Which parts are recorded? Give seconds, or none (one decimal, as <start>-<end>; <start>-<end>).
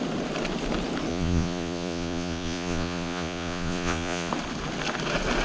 0.0-1.1; 4.3-5.4